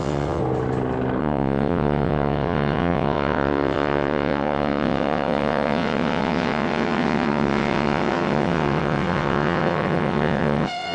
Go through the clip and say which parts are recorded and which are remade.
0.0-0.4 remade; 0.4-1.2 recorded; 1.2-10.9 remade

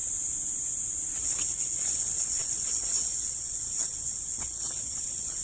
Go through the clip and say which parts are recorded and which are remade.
0.0-1.2 recorded; 1.2-5.4 remade

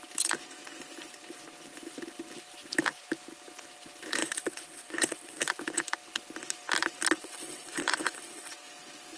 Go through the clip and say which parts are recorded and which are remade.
0.0-4.2 recorded; 4.2-5.4 remade; 5.4-7.2 recorded; 7.2-8.5 remade; 8.5-9.2 recorded

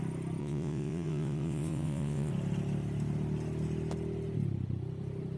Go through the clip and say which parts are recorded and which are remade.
0.0-0.4 recorded; 0.4-2.3 remade; 2.3-5.4 recorded

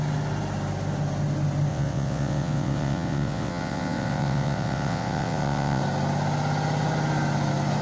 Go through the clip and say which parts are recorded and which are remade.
0.0-1.7 recorded; 1.7-5.8 remade; 5.8-7.8 recorded